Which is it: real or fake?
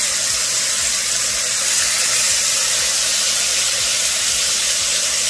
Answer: real